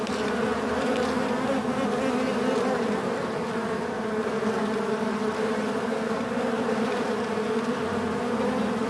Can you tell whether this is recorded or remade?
recorded